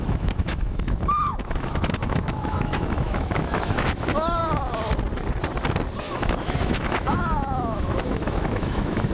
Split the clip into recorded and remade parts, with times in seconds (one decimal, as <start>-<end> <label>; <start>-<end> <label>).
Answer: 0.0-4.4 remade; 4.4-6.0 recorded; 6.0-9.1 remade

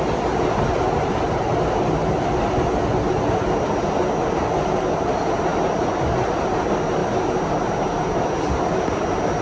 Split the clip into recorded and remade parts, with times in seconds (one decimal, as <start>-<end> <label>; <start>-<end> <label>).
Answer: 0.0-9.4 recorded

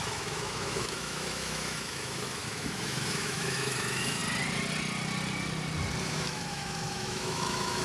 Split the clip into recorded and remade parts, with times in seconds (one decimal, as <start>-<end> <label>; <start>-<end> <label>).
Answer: 0.0-4.2 remade; 4.2-6.0 recorded; 6.0-7.8 remade

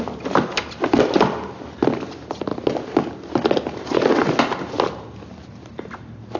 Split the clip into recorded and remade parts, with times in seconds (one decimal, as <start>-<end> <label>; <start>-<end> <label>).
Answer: 0.0-6.4 recorded

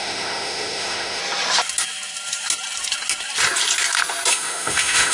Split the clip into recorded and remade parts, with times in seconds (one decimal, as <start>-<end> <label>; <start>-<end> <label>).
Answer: 0.0-1.2 remade; 1.2-4.3 recorded; 4.3-5.1 remade

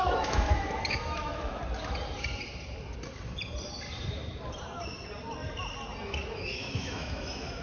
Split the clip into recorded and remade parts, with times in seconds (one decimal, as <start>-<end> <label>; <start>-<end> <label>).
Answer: 0.0-1.6 remade; 1.6-6.2 recorded; 6.2-7.6 remade

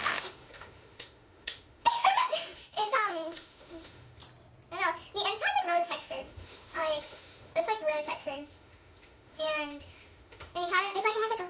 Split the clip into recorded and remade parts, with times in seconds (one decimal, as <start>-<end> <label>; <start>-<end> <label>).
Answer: 0.0-4.2 remade; 4.2-5.6 recorded; 5.6-11.5 remade

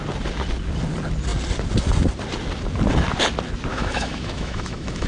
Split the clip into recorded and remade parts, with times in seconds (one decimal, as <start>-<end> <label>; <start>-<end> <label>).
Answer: 0.0-3.7 recorded; 3.7-5.1 remade